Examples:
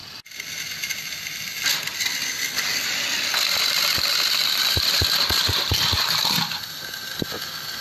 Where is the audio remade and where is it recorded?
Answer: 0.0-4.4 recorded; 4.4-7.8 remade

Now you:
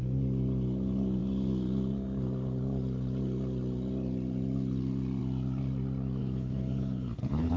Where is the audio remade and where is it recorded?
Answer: 0.0-6.2 recorded; 6.2-7.6 remade

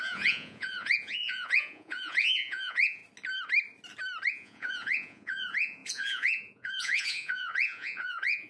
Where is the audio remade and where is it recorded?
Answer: 0.0-3.0 remade; 3.0-4.3 recorded; 4.3-8.5 remade